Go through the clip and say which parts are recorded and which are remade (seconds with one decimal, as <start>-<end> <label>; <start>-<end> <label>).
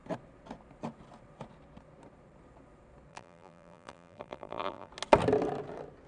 0.0-3.1 recorded; 3.1-4.9 remade; 4.9-6.1 recorded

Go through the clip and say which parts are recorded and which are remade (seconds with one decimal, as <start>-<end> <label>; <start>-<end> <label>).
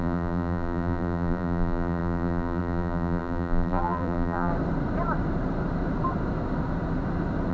0.0-4.5 remade; 4.5-7.5 recorded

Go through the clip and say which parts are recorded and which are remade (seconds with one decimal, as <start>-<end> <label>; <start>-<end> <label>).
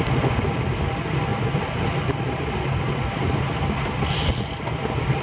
0.0-5.2 recorded